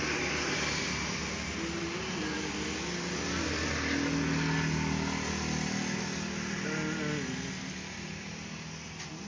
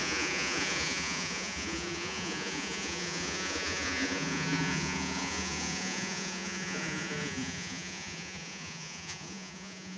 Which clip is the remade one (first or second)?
second